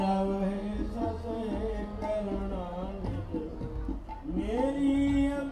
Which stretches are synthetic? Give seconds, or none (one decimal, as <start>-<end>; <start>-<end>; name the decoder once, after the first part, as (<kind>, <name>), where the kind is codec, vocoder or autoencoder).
none